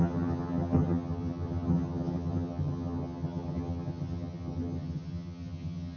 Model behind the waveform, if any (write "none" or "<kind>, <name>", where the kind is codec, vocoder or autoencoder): vocoder, HiFi-GAN